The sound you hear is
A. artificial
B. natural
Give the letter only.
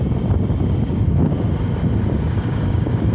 B